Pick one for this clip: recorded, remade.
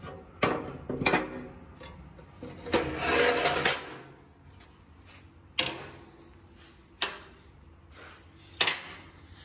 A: recorded